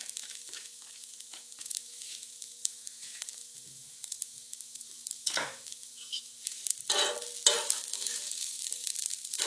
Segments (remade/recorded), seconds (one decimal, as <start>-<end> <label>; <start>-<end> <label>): 0.0-6.6 remade; 6.6-7.6 recorded; 7.6-9.5 remade